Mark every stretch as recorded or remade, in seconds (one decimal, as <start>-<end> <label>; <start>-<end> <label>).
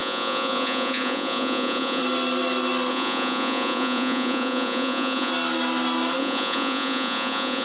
0.0-2.0 remade; 2.0-2.9 recorded; 2.9-5.3 remade; 5.3-6.2 recorded; 6.2-7.6 remade